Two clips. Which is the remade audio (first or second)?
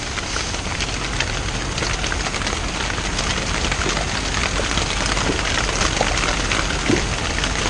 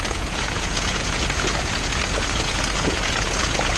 second